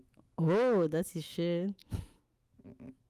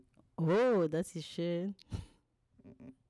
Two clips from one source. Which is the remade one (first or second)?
first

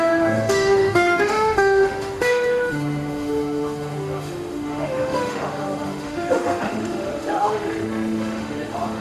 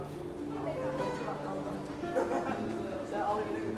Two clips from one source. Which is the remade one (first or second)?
first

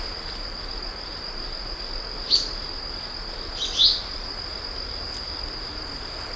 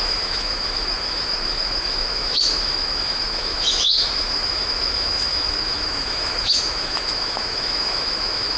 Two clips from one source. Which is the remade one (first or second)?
second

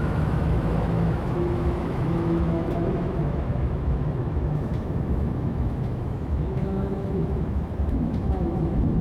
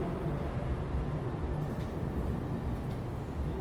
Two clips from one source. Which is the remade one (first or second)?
first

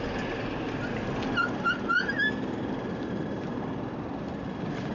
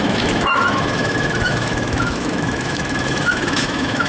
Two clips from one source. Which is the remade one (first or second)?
second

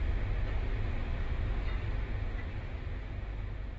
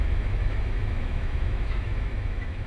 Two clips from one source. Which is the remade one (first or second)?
second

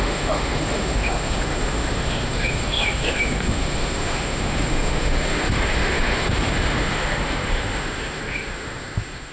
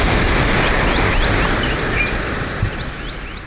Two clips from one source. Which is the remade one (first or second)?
first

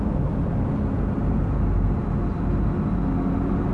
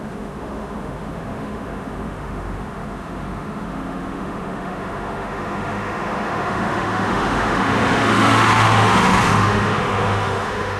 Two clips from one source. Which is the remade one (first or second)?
second